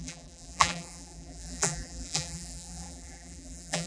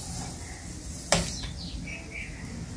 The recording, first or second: second